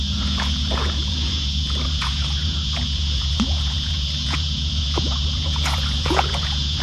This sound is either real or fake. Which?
fake